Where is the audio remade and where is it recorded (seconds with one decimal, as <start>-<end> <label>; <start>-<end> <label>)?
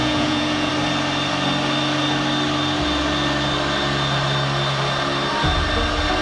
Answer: 0.0-0.7 remade; 0.7-6.2 recorded